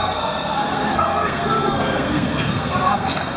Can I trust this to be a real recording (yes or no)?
no